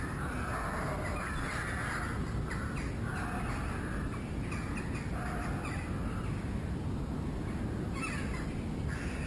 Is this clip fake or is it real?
real